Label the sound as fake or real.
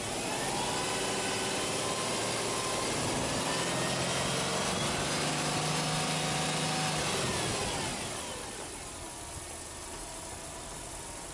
real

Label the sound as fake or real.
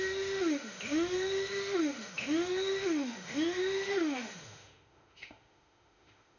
fake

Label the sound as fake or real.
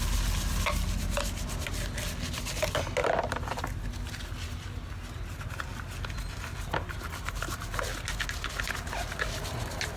real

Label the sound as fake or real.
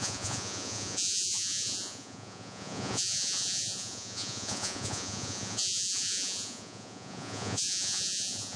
fake